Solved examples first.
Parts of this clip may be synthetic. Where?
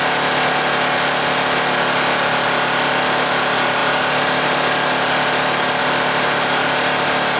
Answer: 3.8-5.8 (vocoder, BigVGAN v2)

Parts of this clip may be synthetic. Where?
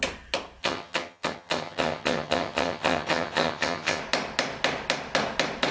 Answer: 0.6-4.0 (vocoder, HiFi-GAN)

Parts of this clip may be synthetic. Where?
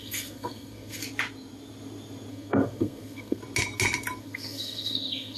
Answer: 0.0-1.0 (codec, SNAC); 2.3-3.4; 4.2-5.4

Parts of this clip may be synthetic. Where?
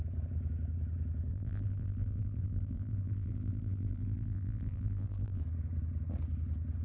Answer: 1.3-5.4 (vocoder, BigVGAN v2)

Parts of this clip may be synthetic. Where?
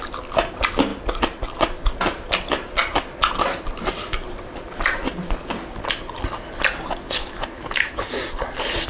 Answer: 7.2-8.0 (autoencoder, DAC-VAE)